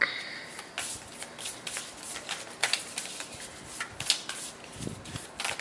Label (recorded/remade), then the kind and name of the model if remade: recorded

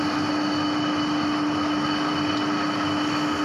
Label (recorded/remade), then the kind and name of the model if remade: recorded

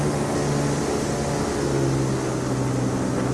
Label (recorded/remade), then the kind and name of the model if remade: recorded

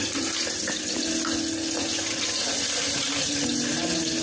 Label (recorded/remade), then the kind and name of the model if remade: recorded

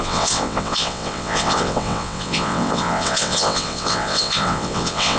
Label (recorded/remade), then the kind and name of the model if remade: remade, vocoder, WaveNeXt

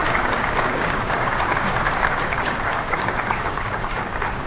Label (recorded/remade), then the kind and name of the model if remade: remade, codec, DAC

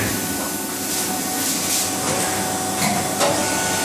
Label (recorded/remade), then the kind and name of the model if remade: recorded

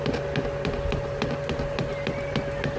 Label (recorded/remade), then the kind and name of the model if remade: recorded